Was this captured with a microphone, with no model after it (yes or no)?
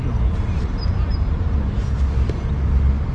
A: yes